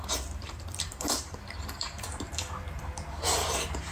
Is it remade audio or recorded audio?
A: remade